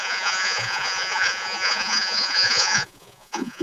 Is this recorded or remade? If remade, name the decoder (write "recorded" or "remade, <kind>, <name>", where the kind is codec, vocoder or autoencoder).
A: remade, vocoder, Vocos